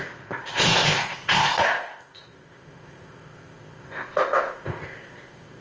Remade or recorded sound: remade